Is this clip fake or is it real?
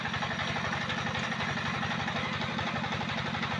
real